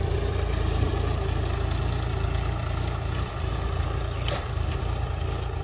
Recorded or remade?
recorded